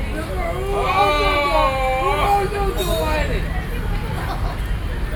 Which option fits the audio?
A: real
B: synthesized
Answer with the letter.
A